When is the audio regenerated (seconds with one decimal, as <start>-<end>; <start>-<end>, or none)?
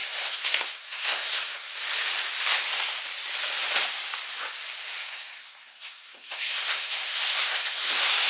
0.0-1.7; 5.0-8.3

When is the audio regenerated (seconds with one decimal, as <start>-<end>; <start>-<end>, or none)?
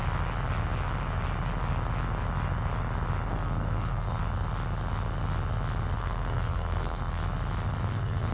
3.3-4.2; 6.0-7.2; 7.9-8.3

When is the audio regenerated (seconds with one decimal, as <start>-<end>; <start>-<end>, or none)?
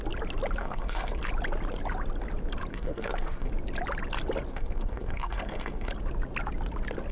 0.6-1.2; 2.7-3.5; 4.5-5.9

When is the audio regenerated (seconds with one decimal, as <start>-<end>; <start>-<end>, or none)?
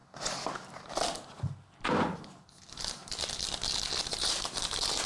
none